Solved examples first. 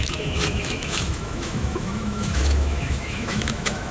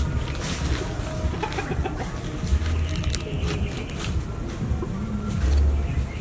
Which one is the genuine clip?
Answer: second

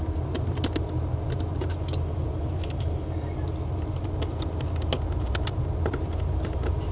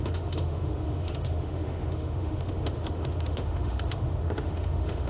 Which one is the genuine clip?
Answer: first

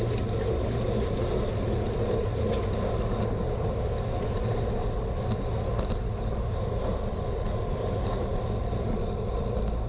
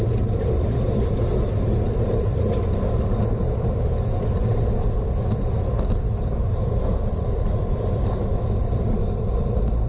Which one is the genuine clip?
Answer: first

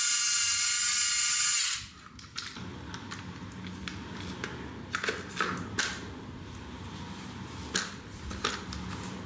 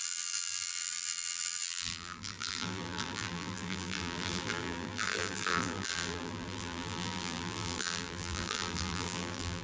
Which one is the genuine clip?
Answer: first